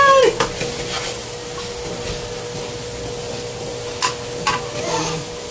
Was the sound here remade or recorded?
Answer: recorded